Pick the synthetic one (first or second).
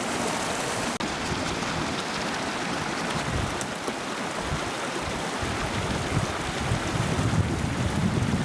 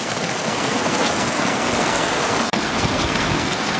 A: second